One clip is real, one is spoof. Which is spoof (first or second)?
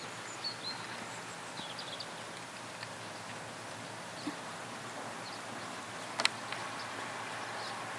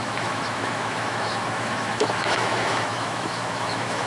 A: second